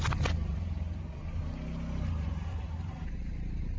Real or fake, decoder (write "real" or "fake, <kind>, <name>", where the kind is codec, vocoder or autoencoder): real